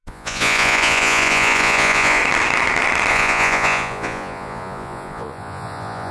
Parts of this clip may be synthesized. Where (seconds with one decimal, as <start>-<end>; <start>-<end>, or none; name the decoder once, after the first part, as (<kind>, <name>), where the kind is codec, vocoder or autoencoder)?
0.0-2.2 (vocoder, Vocos); 3.1-6.1